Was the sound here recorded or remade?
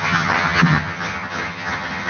remade